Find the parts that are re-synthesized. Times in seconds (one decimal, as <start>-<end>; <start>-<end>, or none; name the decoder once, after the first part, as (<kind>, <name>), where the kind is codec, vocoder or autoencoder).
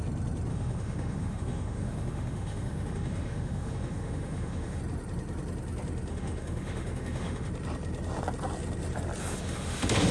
0.5-4.8 (autoencoder, DAC-VAE); 6.1-7.5; 9.2-10.1